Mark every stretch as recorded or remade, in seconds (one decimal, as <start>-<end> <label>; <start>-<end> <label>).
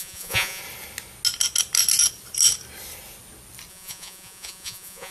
0.0-0.6 remade; 0.6-3.7 recorded; 3.7-5.1 remade